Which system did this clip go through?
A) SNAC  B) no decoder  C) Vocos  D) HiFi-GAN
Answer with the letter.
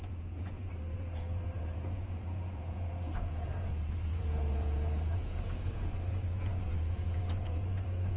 C